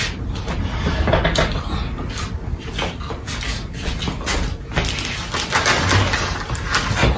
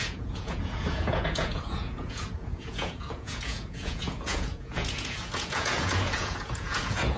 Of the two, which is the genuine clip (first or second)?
first